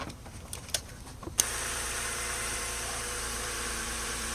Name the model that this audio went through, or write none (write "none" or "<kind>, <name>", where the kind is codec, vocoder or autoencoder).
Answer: vocoder, BigVGAN v2